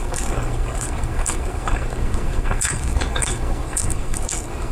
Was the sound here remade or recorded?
remade